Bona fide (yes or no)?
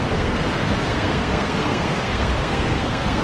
no